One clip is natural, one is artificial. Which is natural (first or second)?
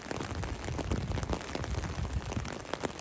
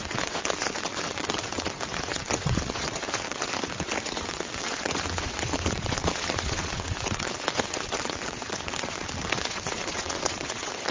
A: first